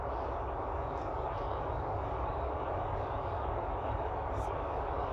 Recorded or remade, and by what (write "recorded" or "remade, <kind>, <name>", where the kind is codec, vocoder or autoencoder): remade, codec, DAC